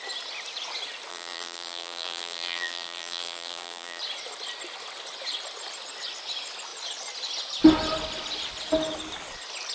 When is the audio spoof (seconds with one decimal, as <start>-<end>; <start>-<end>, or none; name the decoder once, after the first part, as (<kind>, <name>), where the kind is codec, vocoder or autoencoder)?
1.1-4.0 (vocoder, BigVGAN v2)